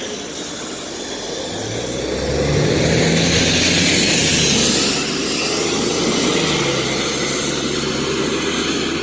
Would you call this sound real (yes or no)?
yes